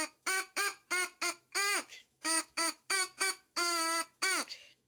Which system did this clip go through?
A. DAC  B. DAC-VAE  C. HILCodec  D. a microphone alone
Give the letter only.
B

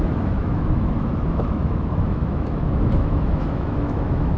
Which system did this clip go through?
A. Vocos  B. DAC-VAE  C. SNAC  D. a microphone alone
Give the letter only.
B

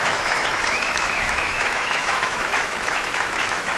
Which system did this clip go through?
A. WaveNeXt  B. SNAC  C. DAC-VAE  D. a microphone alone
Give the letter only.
C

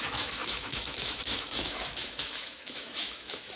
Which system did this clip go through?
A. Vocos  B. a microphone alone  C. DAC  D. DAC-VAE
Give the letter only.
D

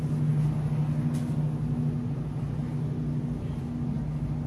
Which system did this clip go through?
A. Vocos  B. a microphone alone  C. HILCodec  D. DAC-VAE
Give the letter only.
B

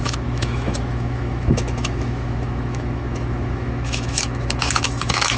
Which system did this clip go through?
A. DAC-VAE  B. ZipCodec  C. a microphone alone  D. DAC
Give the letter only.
A